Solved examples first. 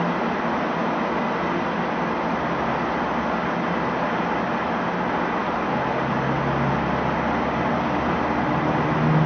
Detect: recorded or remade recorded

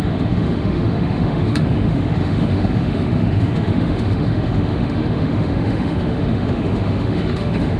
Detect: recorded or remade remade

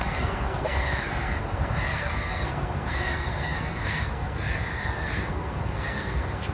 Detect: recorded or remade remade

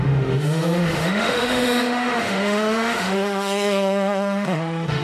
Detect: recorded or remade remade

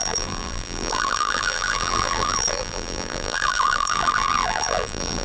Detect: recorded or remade remade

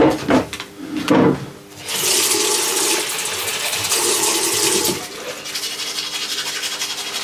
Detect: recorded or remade recorded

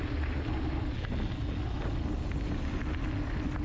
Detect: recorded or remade recorded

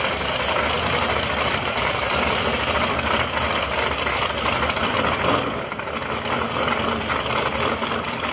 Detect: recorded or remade recorded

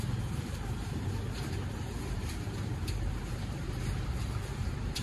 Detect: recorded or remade remade